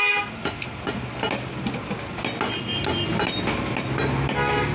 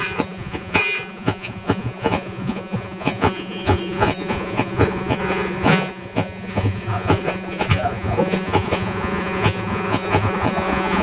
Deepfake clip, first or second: second